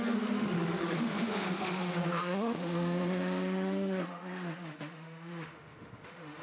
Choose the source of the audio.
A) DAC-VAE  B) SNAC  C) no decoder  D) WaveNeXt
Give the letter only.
A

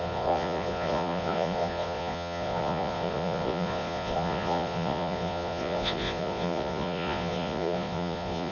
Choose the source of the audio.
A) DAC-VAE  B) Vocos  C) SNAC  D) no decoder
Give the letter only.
B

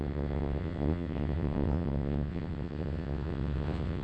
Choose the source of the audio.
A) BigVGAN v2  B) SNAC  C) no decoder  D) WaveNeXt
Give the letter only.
D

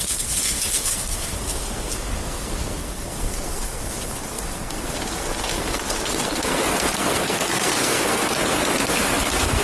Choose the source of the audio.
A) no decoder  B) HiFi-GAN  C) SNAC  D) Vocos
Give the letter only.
C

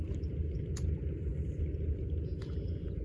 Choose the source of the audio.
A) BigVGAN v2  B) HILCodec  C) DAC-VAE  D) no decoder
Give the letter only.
D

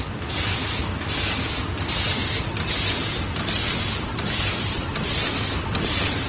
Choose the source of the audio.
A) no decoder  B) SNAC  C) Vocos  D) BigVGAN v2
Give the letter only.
A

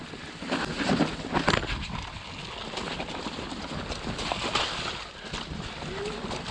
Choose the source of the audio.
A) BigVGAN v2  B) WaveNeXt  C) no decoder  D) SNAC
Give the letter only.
C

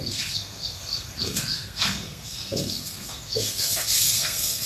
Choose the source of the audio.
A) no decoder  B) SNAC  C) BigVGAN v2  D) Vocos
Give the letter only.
B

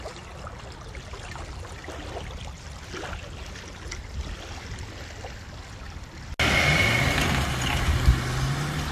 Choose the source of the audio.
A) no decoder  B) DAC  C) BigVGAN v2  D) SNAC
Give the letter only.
A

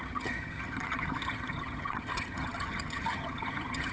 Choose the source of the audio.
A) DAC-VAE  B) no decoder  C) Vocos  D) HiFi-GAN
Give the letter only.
D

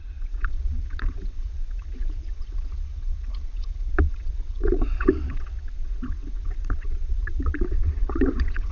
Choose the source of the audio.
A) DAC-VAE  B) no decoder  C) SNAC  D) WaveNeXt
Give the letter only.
D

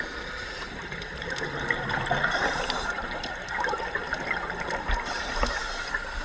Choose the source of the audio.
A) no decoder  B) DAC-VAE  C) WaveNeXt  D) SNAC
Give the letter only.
A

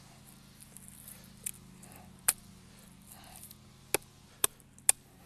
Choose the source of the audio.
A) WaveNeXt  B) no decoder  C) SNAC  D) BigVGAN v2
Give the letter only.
B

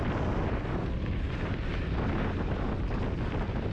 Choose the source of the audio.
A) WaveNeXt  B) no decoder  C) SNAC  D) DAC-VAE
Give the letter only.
B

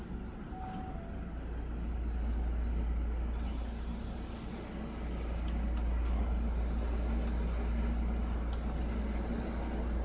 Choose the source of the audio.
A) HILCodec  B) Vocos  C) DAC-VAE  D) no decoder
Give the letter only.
D